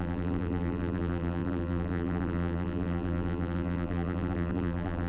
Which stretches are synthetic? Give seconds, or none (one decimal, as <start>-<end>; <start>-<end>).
0.0-5.1